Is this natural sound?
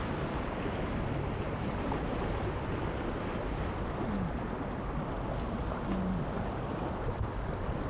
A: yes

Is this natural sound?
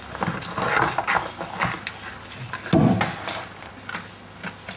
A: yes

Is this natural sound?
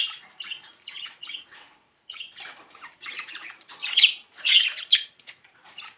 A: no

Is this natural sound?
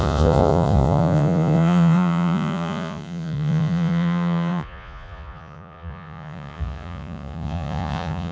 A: no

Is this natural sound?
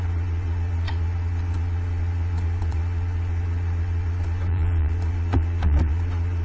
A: no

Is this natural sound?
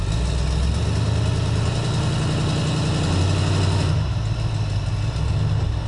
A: yes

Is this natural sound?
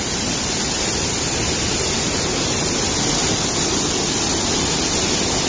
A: yes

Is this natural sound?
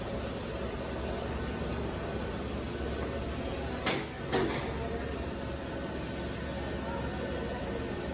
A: yes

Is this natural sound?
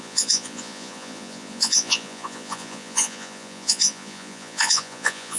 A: no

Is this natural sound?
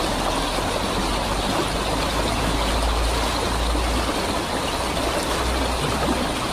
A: yes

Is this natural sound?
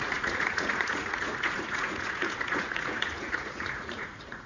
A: no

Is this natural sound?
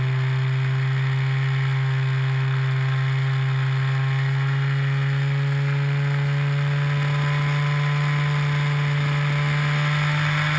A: yes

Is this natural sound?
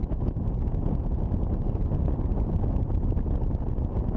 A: yes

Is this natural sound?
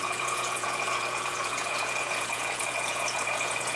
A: no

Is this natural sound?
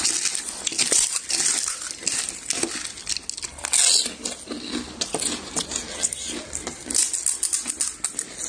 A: yes